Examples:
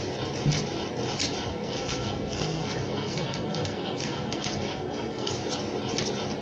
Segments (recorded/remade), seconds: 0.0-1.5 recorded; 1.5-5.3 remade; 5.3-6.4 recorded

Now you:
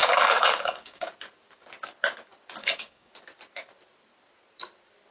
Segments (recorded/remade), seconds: 0.0-1.1 remade; 1.1-2.6 recorded; 2.6-3.1 remade; 3.1-5.1 recorded

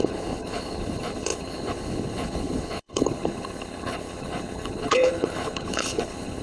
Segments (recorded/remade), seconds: 0.0-6.4 remade

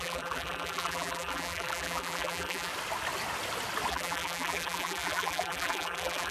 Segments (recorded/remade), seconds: 0.0-2.7 remade; 2.7-3.9 recorded; 3.9-6.3 remade

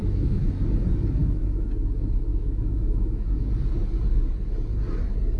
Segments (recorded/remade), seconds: 0.0-0.5 remade; 0.5-1.2 recorded; 1.2-1.7 remade; 1.7-2.3 recorded; 2.3-3.5 remade; 3.5-5.4 recorded

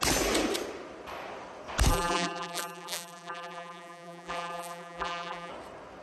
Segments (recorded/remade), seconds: 0.0-1.9 recorded; 1.9-5.5 remade; 5.5-6.0 recorded

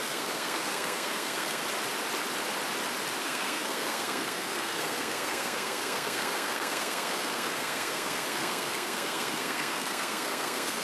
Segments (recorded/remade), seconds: 0.0-1.6 remade; 1.6-3.2 recorded; 3.2-10.8 remade

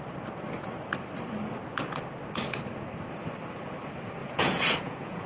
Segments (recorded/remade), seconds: 0.0-4.2 recorded; 4.2-5.3 remade